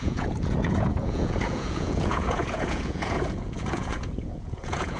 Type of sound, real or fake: fake